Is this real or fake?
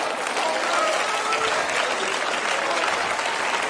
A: real